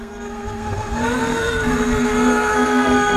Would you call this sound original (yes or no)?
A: no